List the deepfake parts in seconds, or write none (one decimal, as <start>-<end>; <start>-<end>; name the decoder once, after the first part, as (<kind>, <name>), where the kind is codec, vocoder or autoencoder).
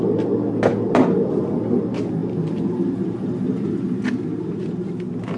0.7-1.4 (vocoder, BigVGAN v2); 2.2-4.6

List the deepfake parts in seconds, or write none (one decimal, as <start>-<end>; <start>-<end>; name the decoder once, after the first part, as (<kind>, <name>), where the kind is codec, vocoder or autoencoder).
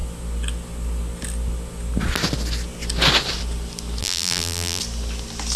4.0-4.8 (vocoder, BigVGAN v2)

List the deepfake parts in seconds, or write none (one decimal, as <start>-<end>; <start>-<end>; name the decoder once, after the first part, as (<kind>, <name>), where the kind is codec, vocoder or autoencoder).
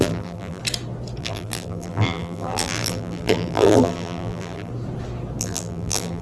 0.0-0.6 (vocoder, BigVGAN v2); 1.2-4.7; 5.4-6.2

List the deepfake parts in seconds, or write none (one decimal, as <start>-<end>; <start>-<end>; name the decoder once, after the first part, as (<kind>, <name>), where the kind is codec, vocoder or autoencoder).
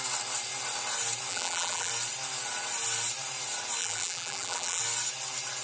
1.3-1.9 (vocoder, BigVGAN v2); 3.8-4.8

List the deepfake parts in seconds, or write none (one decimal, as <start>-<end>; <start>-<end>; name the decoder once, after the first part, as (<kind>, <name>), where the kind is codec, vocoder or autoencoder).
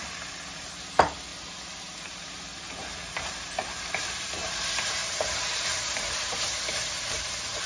1.3-2.4 (vocoder, BigVGAN v2); 4.4-7.3